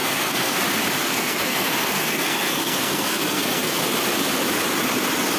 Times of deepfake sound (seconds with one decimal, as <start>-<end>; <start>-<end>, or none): 0.0-0.6; 1.0-3.8

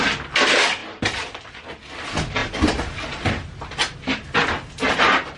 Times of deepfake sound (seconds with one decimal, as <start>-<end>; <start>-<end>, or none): none

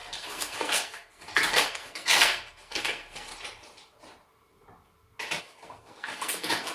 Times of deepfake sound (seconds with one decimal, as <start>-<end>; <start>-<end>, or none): 0.0-3.3; 5.4-6.7

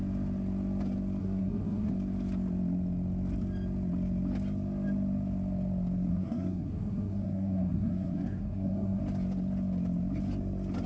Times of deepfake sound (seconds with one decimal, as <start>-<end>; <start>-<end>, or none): 1.2-1.9; 6.1-9.0

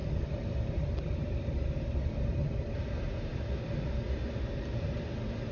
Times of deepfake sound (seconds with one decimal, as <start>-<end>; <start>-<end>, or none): none

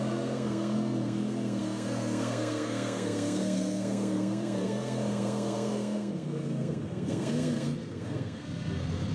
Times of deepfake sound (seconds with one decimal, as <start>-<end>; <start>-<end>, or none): 0.0-9.1